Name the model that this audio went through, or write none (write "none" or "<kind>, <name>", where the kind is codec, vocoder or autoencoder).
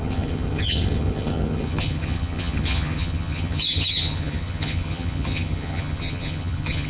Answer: vocoder, HiFi-GAN